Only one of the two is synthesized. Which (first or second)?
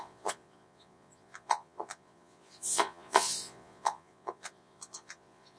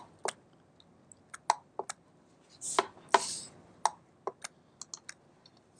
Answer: first